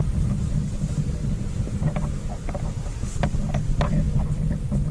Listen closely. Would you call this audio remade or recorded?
recorded